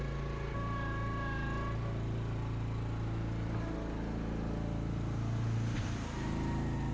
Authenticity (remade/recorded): recorded